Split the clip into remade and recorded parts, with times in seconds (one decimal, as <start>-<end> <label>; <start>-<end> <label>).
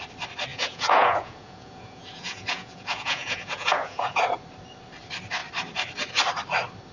0.0-0.5 recorded; 0.5-4.2 remade; 4.2-6.9 recorded